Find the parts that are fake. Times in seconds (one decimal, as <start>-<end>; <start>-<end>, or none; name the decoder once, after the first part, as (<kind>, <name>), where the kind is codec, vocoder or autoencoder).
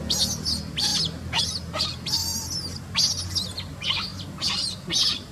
none